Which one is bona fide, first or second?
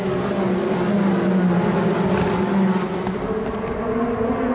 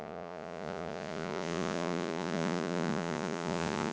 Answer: first